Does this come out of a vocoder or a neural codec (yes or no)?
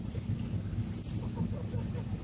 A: no